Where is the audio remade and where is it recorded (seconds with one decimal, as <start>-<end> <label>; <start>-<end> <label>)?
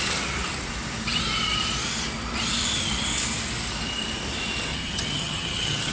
0.0-4.7 recorded; 4.7-5.9 remade